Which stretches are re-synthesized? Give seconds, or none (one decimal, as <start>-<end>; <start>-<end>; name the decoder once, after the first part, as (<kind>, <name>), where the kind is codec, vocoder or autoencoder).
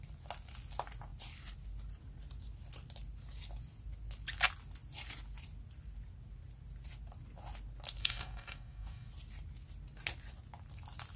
8.0-9.1 (codec, DAC)